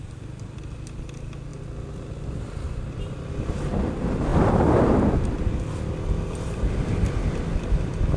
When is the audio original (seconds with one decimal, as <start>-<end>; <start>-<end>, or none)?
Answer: 0.0-8.2